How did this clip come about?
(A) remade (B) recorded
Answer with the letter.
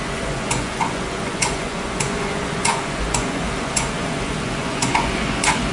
A